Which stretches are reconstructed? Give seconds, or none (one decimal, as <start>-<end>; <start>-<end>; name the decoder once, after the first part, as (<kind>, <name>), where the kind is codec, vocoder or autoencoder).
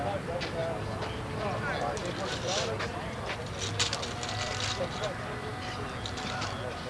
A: 2.0-5.5 (vocoder, BigVGAN v2)